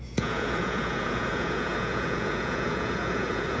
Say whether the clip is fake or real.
fake